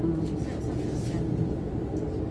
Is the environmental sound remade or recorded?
recorded